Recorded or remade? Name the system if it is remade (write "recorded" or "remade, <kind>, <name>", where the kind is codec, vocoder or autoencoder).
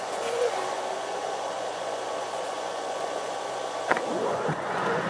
remade, vocoder, Vocos